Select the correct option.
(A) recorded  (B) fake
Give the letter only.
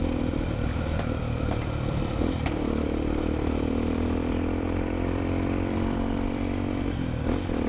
B